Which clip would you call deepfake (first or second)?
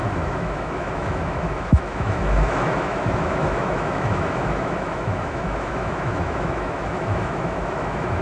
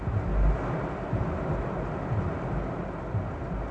first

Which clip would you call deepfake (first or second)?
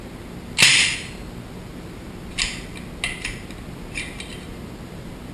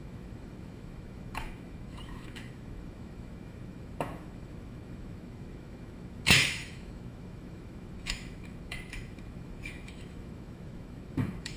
second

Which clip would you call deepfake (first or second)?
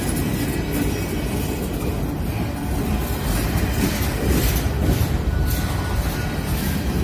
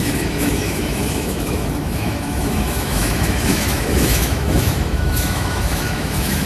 second